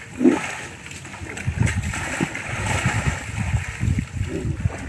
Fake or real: real